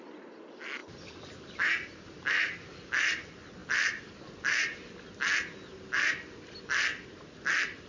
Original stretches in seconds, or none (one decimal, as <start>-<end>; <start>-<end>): 0.0-7.9